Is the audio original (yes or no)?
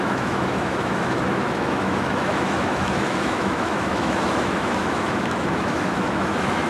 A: no